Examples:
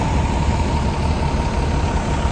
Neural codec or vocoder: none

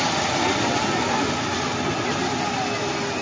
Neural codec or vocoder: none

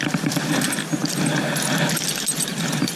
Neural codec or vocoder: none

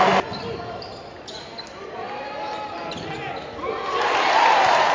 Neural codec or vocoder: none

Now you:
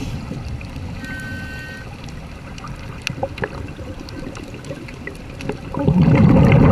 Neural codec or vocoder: none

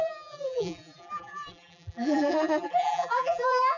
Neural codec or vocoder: vocoder, BigVGAN v2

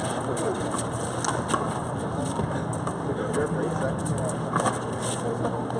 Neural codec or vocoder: none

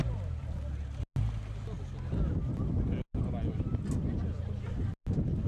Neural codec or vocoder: none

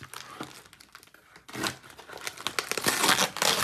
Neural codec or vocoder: none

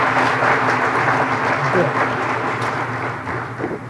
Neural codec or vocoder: none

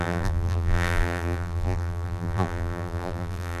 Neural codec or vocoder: vocoder, BigVGAN v2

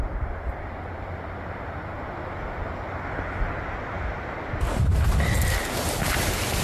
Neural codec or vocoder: none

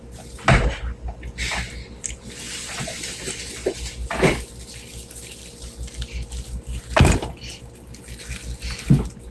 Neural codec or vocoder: none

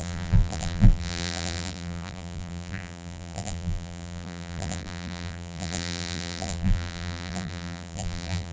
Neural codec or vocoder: vocoder, BigVGAN v2